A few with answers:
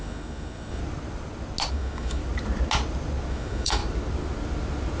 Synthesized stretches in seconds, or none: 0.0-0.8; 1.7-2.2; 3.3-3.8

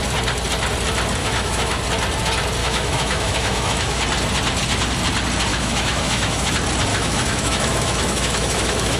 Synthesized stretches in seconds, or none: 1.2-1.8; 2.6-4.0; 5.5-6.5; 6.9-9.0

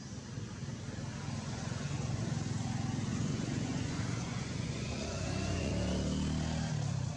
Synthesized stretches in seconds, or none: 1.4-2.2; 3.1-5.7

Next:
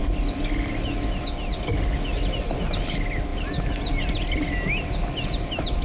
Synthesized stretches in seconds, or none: none

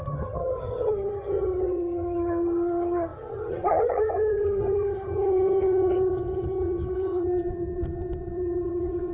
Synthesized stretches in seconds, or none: 0.0-9.1

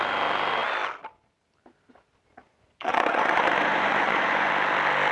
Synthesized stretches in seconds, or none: 2.4-4.5

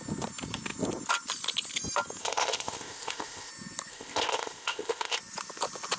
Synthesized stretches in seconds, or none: 2.2-3.5; 3.9-5.2